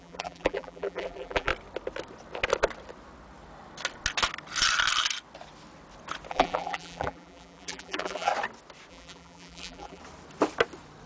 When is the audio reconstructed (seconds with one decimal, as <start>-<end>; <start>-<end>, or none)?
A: 0.0-1.5; 6.3-8.3; 8.9-10.0